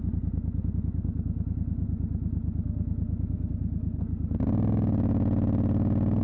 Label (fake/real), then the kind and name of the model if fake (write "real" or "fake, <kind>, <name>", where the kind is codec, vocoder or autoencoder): real